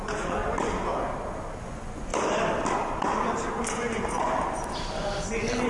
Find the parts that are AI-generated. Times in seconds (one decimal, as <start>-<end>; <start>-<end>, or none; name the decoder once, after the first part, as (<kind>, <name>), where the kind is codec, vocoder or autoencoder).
0.0-0.4 (vocoder, Vocos); 1.6-2.1